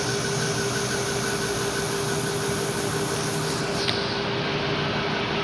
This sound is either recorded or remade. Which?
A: recorded